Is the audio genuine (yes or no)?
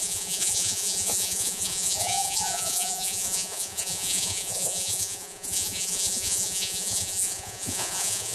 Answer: no